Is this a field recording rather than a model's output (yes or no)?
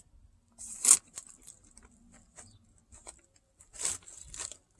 yes